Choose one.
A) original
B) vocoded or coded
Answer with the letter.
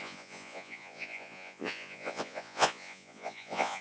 B